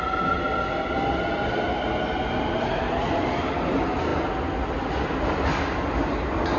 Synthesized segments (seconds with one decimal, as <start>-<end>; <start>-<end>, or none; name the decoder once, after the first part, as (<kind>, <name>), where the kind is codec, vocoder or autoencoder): none